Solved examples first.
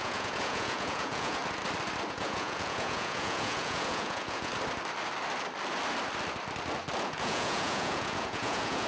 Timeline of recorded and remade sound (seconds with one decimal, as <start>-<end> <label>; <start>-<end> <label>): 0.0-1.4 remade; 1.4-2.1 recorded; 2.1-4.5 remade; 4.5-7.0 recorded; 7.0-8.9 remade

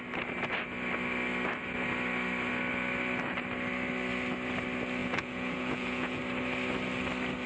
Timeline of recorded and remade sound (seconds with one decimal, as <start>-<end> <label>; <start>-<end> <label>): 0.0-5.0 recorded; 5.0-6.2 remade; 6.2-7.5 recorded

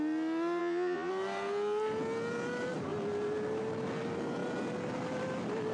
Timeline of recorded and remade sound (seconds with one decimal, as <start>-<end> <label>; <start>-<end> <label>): 0.0-0.6 recorded; 0.6-1.1 remade; 1.1-5.7 recorded

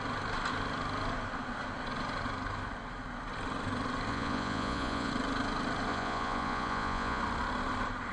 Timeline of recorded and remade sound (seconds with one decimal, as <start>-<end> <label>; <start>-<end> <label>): 0.0-4.1 recorded; 4.1-5.1 remade; 5.1-5.9 recorded; 5.9-7.2 remade; 7.2-8.1 recorded

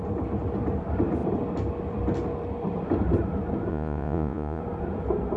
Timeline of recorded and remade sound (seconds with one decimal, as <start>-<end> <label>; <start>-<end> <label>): 0.0-3.7 recorded; 3.7-4.6 remade; 4.6-5.4 recorded